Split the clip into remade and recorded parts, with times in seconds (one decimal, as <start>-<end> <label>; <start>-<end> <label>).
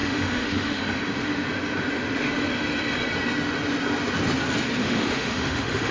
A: 0.0-0.8 remade; 0.8-4.8 recorded; 4.8-5.9 remade